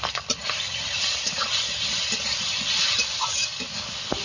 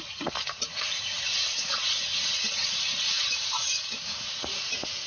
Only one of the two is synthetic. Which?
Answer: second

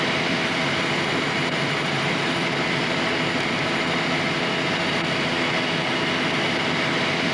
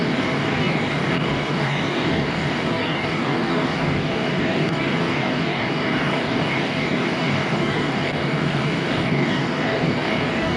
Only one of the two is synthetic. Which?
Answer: second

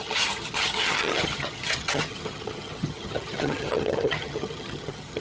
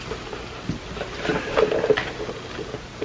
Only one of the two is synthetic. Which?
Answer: first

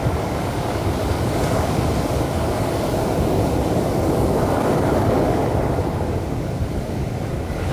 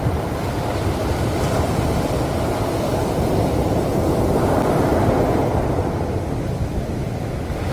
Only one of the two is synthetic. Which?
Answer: first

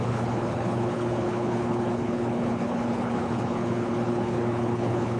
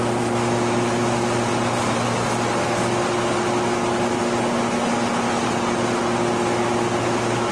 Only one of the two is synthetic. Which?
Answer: first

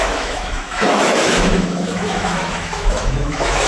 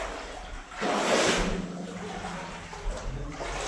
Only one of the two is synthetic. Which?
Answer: first